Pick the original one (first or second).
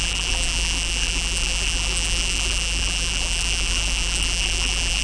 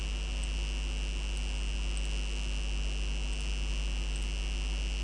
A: second